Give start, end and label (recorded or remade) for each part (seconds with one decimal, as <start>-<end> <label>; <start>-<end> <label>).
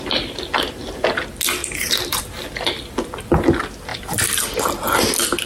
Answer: 0.0-1.6 recorded; 1.6-2.2 remade; 2.2-3.9 recorded; 3.9-4.4 remade; 4.4-5.5 recorded